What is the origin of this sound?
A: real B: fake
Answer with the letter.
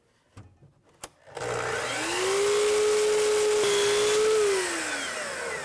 A